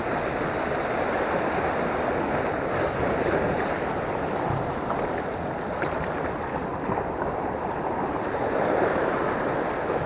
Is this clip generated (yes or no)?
no